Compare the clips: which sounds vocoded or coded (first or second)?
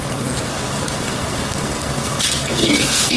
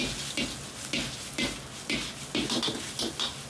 first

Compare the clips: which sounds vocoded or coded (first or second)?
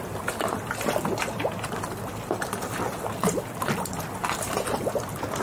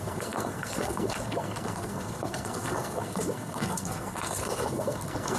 second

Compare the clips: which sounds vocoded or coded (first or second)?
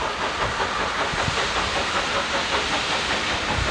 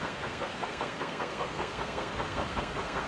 second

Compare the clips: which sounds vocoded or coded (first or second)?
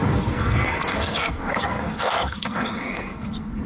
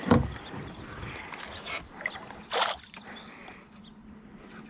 first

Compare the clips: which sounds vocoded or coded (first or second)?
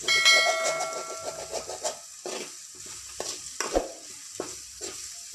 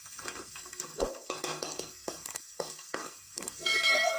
second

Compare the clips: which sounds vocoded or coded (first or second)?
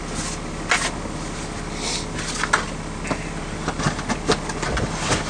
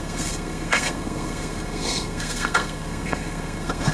second